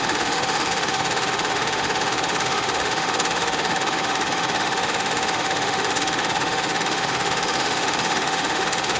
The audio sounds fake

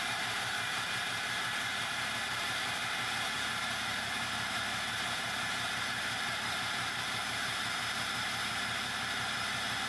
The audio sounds fake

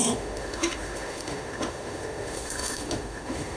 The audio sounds fake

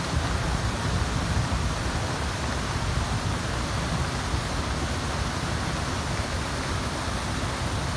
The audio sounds real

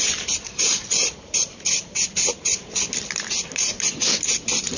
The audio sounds fake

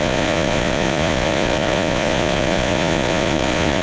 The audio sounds fake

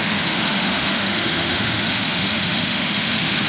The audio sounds fake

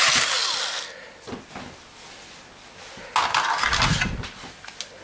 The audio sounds real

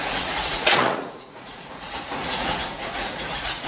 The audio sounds fake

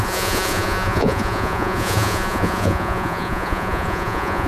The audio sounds fake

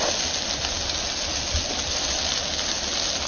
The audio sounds real